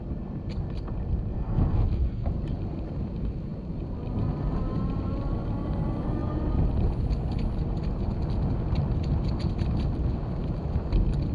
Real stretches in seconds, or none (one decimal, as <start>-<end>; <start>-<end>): 0.0-1.3; 2.3-11.3